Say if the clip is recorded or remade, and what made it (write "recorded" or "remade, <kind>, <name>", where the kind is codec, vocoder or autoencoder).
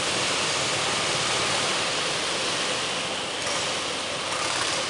recorded